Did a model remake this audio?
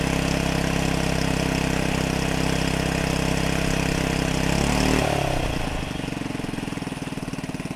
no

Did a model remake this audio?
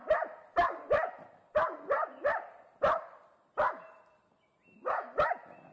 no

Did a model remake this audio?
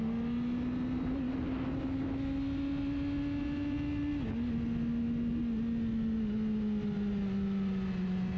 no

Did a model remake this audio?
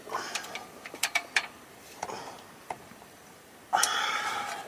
yes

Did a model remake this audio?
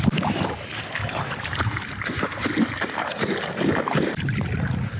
no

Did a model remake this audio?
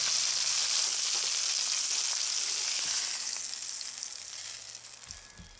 no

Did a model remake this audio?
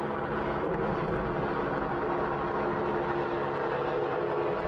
no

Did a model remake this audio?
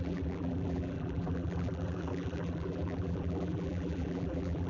yes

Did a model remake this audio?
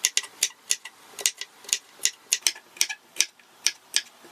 no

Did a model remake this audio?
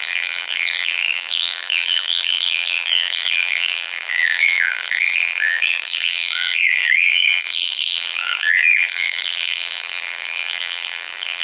yes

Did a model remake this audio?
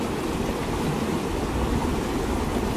no